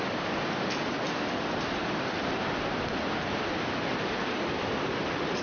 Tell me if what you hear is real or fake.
real